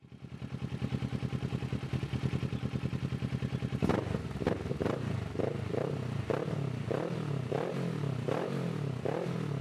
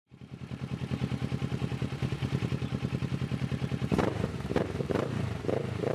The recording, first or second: first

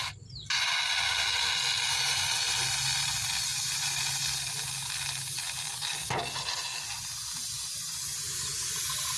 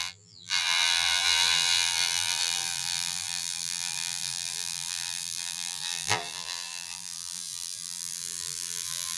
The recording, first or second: first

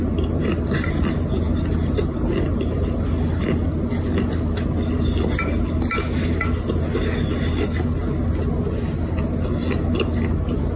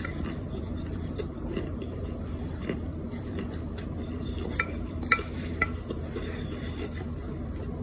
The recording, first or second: first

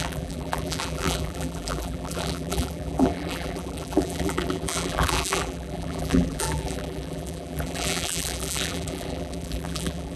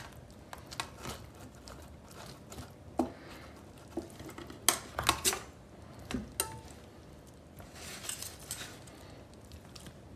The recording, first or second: second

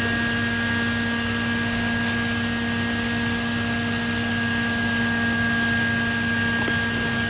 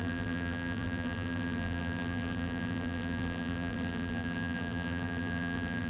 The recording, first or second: first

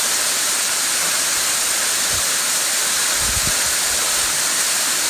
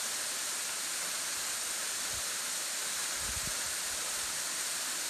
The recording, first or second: first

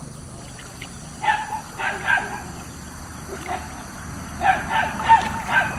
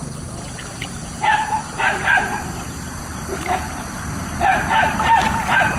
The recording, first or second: first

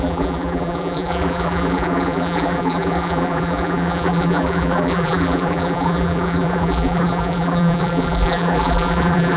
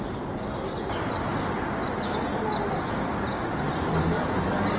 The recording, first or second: second